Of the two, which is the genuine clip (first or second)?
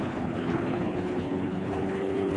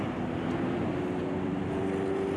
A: second